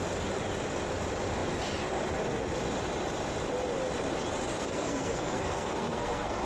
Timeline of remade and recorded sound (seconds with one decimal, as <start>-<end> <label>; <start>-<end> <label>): 0.0-4.5 recorded; 4.5-6.4 remade